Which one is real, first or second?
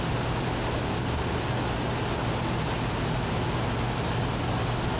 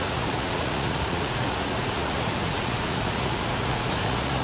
first